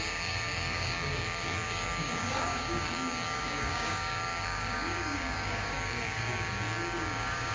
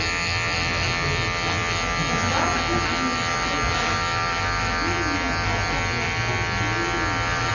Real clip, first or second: second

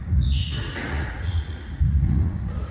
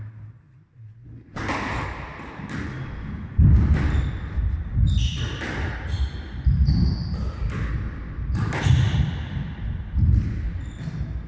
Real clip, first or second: second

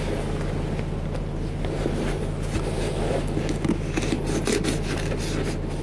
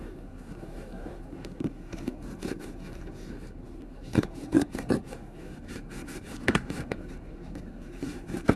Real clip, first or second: first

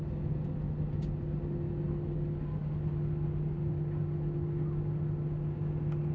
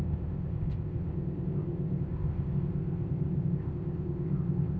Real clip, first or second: first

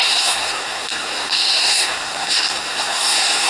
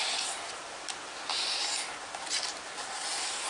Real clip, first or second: second